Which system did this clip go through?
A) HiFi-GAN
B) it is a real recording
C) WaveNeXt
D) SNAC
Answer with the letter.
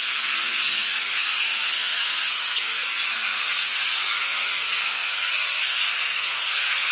D